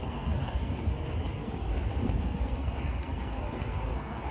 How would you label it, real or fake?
fake